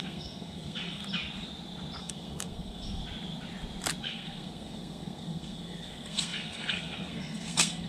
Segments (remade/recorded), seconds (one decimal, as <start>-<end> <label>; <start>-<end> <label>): 0.0-1.0 remade; 1.0-2.0 recorded; 2.0-3.0 remade; 3.0-4.0 recorded; 4.0-7.9 remade